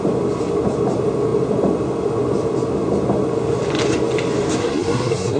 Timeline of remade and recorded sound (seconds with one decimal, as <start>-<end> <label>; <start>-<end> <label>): 0.0-4.6 recorded; 4.6-5.4 remade